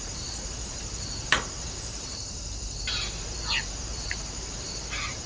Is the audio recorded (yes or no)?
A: no